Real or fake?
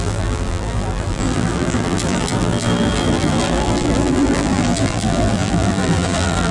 fake